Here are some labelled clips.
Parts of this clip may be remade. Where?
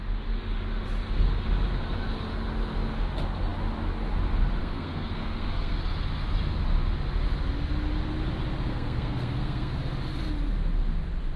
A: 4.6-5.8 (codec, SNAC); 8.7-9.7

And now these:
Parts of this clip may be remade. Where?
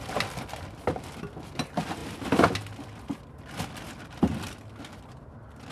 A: none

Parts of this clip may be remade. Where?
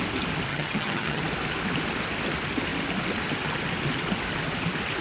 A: 0.5-1.2 (vocoder, HiFi-GAN)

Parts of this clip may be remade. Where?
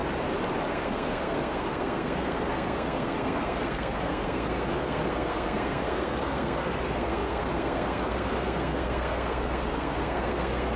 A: 0.7-10.8 (codec, SNAC)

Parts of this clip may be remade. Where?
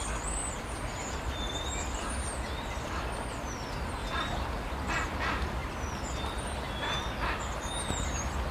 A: 0.4-2.9 (vocoder, BigVGAN v2); 4.0-4.9; 5.6-7.1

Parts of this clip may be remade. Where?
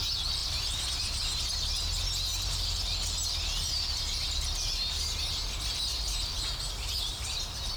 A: 0.4-0.9 (vocoder, BigVGAN v2)